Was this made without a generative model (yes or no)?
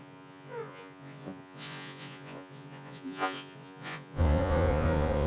no